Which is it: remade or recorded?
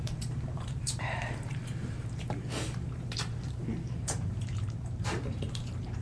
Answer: remade